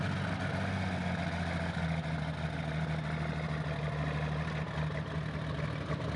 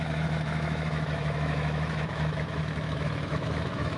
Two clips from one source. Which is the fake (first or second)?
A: second